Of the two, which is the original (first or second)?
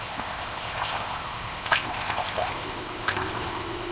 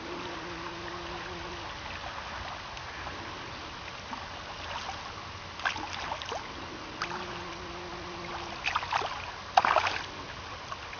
second